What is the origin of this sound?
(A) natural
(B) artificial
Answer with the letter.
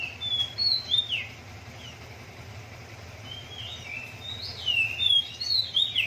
A